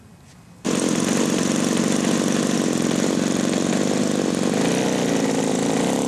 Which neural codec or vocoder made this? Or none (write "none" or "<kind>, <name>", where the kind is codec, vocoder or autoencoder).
none